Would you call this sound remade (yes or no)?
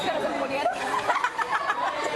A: yes